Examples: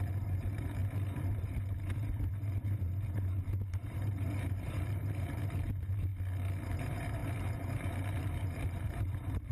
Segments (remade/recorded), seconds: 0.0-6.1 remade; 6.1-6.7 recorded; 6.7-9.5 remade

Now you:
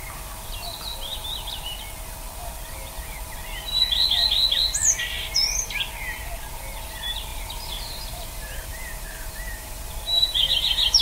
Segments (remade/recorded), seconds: 0.0-7.3 recorded; 7.3-11.0 remade